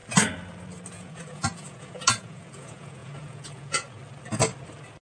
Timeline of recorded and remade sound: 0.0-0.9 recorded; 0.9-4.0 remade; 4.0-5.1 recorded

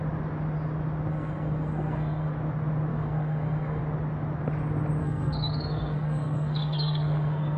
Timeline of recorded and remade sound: 0.0-1.1 recorded; 1.1-2.3 remade; 2.3-2.9 recorded; 2.9-3.8 remade; 3.8-5.0 recorded; 5.0-7.6 remade